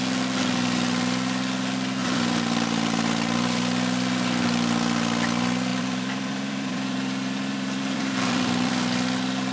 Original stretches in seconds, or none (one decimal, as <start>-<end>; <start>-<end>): 0.0-2.0; 3.6-5.7; 8.7-9.5